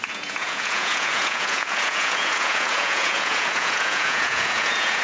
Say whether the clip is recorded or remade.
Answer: remade